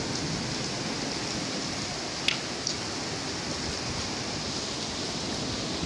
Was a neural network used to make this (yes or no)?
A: no